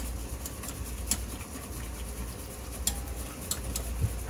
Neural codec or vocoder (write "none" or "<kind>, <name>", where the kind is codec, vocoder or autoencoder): none